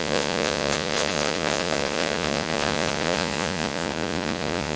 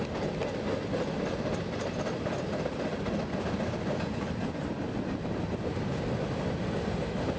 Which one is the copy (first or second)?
first